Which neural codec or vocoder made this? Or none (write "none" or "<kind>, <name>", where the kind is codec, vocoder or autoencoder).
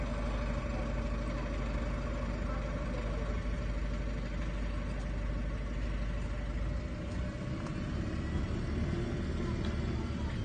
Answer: none